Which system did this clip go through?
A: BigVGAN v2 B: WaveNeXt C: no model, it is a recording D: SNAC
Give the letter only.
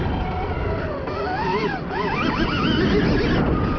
C